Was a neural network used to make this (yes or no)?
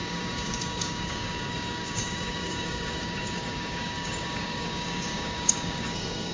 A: yes